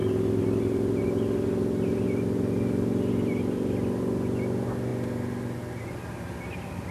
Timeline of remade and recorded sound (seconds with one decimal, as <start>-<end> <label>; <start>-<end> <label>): 0.0-6.9 recorded